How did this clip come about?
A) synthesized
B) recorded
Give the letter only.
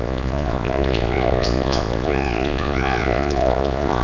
A